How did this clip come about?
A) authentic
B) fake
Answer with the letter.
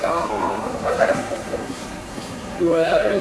B